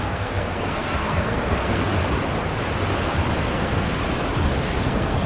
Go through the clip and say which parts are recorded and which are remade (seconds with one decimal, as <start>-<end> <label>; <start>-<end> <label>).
0.0-1.9 remade; 1.9-3.5 recorded; 3.5-4.0 remade; 4.0-4.8 recorded; 4.8-5.3 remade